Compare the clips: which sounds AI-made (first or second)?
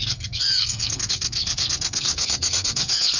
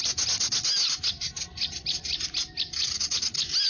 first